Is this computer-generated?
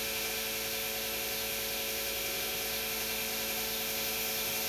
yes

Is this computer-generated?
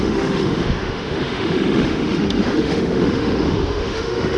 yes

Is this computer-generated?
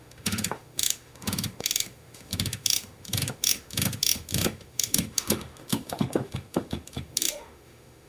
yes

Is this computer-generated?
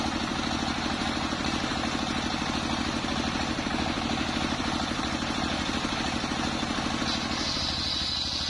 no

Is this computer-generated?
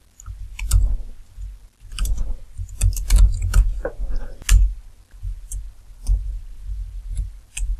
no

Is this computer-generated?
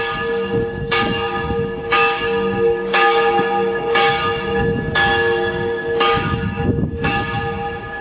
yes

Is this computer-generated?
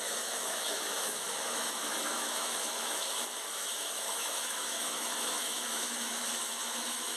yes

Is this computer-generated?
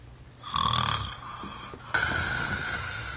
no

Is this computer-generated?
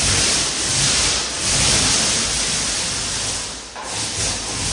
no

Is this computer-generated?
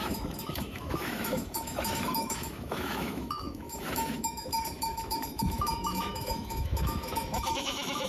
yes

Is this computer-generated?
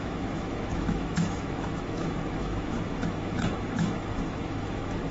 yes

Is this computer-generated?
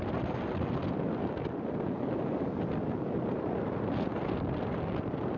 no